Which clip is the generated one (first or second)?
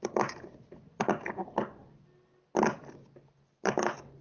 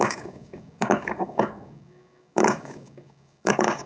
second